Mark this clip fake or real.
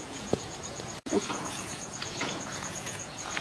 fake